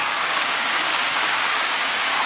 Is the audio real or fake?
fake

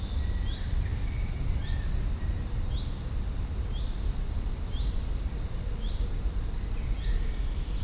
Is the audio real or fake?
real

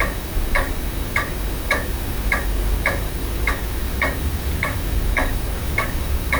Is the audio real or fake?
fake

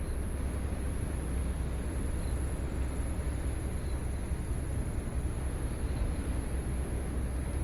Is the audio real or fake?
real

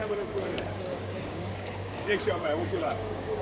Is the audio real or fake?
fake